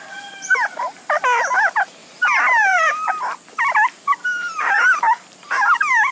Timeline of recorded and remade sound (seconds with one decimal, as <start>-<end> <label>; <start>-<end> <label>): 0.0-2.0 recorded; 2.0-2.9 remade; 2.9-4.2 recorded; 4.2-6.1 remade